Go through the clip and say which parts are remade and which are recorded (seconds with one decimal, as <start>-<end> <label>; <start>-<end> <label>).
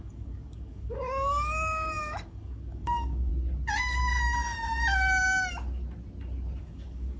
0.0-3.3 remade; 3.3-6.6 recorded; 6.6-7.2 remade